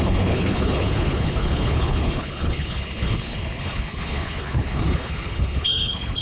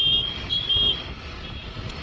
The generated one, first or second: first